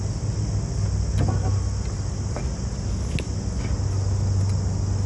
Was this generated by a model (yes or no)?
no